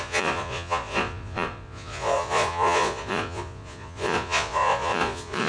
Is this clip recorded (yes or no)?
no